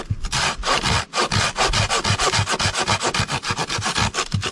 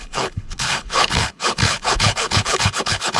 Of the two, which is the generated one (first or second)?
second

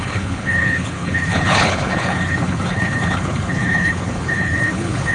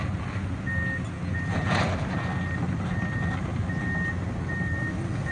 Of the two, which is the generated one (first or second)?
first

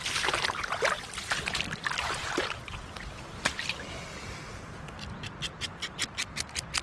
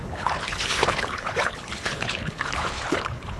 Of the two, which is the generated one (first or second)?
second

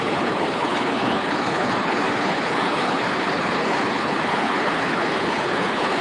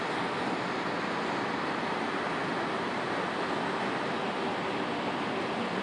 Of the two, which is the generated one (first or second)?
first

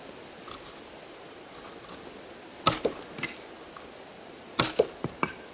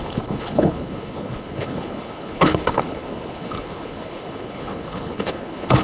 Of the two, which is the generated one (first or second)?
second